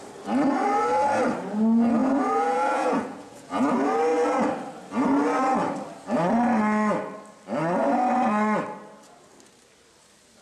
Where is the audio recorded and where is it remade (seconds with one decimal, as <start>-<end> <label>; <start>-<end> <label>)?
0.0-2.0 recorded; 2.0-3.6 remade; 3.6-10.4 recorded